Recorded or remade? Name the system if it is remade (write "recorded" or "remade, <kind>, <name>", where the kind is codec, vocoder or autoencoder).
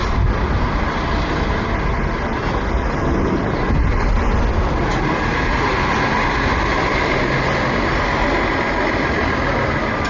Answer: recorded